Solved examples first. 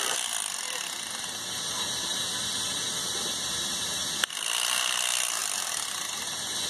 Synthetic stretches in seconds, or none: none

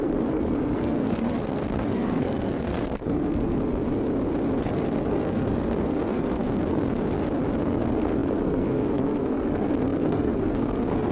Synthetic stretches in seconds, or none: 0.0-3.9 (codec, SNAC); 4.6-6.9; 7.6-11.1

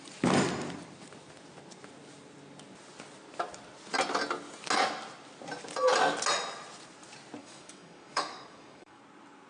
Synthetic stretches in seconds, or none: 7.4-9.0 (codec, DAC)

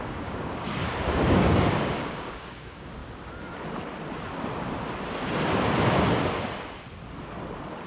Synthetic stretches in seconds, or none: 0.0-3.0 (codec, DAC)

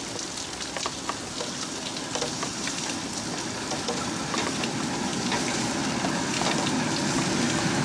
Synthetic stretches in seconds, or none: 1.9-2.7 (vocoder, BigVGAN v2)

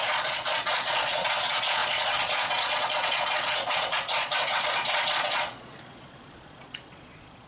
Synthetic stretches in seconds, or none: 0.0-7.5 (vocoder, Vocos)